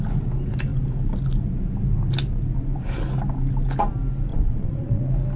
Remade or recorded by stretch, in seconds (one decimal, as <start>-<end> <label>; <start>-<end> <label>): 0.0-4.3 recorded; 4.3-5.0 remade; 5.0-5.4 recorded